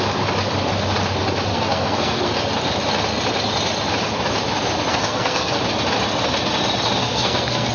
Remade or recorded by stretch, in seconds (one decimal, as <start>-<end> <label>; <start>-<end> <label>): 0.0-1.5 recorded; 1.5-2.3 remade; 2.3-4.9 recorded; 4.9-5.6 remade; 5.6-7.0 recorded; 7.0-7.7 remade